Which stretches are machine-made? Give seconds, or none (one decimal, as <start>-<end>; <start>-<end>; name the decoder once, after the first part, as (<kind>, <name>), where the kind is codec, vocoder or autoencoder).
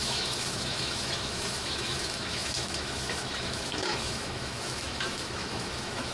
0.0-6.1 (autoencoder, DAC-VAE)